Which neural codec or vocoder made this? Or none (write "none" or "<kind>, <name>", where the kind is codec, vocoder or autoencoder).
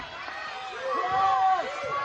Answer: none